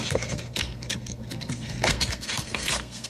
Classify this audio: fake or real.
fake